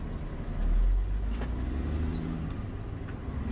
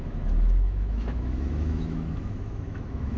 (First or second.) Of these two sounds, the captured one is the first